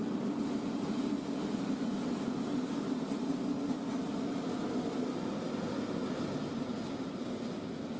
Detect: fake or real real